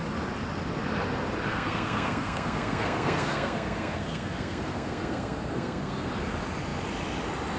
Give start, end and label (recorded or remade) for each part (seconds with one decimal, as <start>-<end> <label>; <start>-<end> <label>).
0.0-1.5 recorded; 1.5-6.1 remade; 6.1-7.6 recorded